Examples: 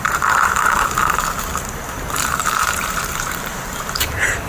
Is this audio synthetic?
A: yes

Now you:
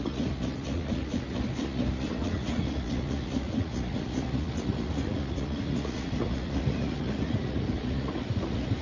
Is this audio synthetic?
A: yes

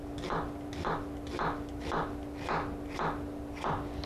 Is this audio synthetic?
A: no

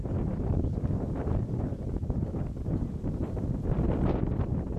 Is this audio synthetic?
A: no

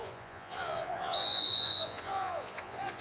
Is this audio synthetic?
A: yes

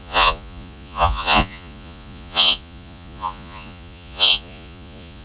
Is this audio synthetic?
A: yes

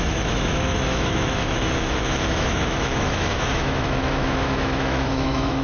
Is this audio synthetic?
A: yes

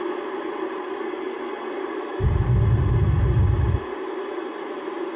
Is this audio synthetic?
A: no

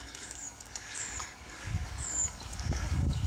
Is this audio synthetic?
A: yes